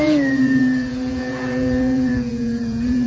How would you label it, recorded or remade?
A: remade